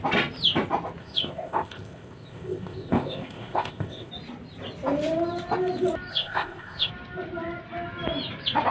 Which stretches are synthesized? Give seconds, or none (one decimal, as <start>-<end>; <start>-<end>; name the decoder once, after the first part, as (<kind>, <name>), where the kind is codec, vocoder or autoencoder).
1.0-4.1 (codec, ZipCodec); 6.1-6.9